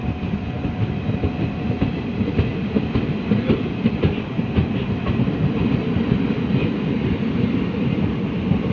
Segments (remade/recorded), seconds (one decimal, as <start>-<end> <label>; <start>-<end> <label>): 0.0-8.7 recorded